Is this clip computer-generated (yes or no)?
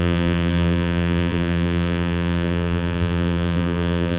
yes